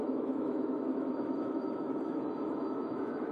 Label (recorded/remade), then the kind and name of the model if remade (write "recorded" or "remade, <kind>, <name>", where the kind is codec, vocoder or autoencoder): remade, autoencoder, DAC-VAE